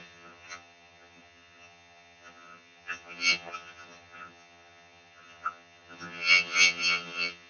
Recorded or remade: remade